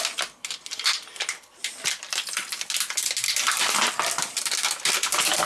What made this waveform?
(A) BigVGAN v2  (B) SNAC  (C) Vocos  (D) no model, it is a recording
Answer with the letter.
D